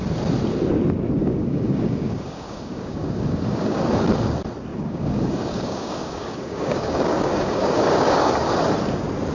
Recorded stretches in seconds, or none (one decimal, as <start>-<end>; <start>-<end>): 0.0-1.2; 3.8-4.7; 8.3-9.3